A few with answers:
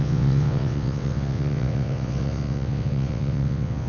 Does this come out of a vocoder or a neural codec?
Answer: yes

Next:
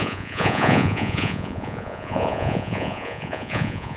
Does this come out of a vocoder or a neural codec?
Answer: yes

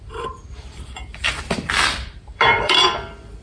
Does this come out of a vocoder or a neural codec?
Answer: yes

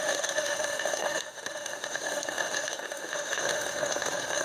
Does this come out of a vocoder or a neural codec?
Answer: yes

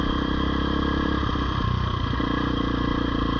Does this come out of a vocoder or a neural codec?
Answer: yes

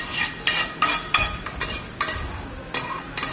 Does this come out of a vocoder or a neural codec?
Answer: no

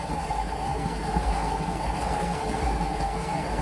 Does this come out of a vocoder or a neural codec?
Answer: yes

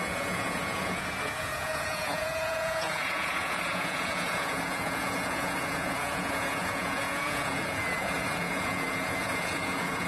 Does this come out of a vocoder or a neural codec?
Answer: yes